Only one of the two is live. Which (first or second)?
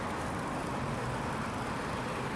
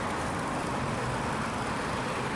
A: first